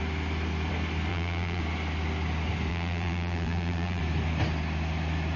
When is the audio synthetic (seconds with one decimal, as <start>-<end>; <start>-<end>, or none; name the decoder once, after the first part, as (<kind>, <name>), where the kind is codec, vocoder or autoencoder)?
1.1-1.6 (vocoder, Vocos); 2.7-4.0